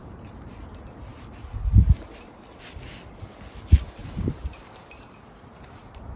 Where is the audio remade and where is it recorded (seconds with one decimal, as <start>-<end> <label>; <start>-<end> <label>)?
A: 0.0-0.6 remade; 0.6-4.0 recorded; 4.0-6.2 remade